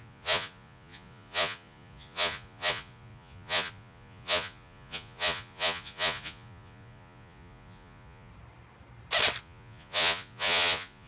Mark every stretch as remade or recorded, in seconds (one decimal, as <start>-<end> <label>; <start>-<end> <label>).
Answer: 0.0-8.3 remade; 8.3-9.4 recorded; 9.4-11.1 remade